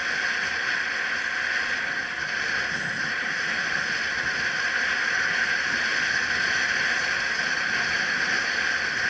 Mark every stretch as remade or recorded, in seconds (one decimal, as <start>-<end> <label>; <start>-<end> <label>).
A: 0.0-9.1 recorded